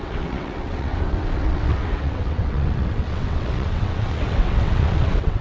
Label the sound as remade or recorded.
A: remade